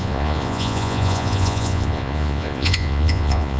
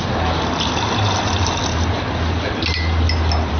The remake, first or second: first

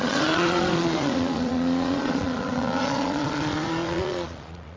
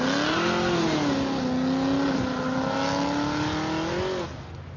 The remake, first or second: first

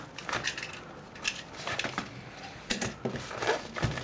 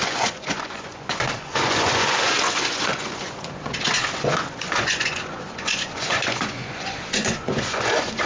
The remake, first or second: second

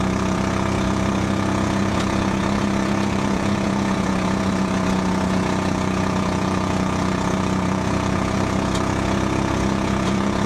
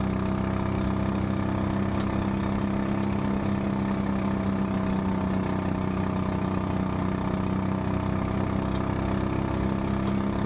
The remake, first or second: first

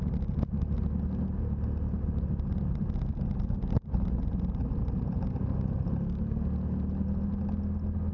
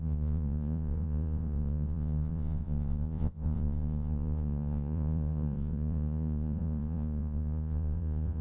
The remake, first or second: second